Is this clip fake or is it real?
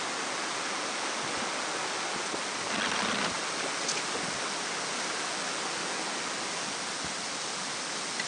real